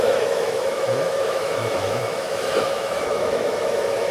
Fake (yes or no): yes